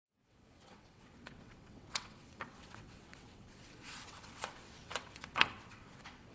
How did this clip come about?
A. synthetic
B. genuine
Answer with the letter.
A